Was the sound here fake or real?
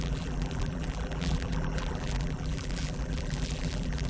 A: fake